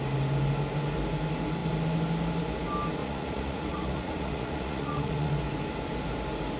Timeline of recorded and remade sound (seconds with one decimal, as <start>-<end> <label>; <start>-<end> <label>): 0.0-3.0 recorded; 3.0-5.3 remade; 5.3-6.6 recorded